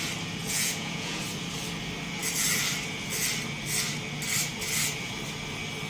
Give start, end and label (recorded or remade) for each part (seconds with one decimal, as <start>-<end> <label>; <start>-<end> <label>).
0.0-0.4 recorded; 0.4-1.2 remade; 1.2-5.9 recorded